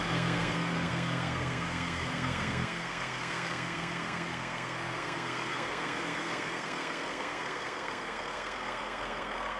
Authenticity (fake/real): fake